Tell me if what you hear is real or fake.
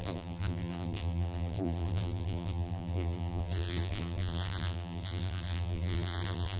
fake